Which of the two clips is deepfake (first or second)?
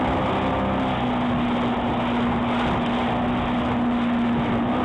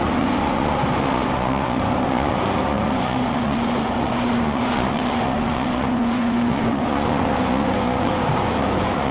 second